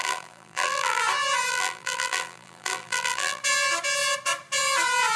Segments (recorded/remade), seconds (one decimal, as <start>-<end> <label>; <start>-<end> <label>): 0.0-1.0 remade; 1.0-1.5 recorded; 1.5-3.4 remade; 3.4-5.2 recorded